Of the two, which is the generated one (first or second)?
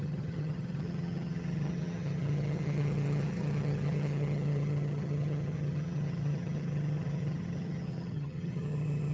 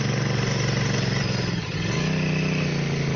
first